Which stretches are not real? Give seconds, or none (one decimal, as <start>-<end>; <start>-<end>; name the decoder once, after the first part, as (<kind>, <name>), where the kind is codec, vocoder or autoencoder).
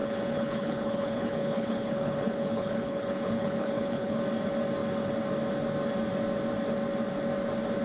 0.0-4.2 (codec, HILCodec)